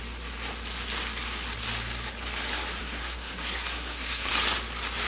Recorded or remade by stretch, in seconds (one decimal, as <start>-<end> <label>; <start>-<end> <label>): 0.0-2.8 recorded; 2.8-4.3 remade; 4.3-5.1 recorded